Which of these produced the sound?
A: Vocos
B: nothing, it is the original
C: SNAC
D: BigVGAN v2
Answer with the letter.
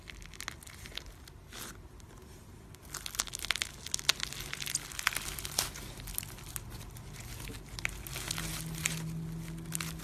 B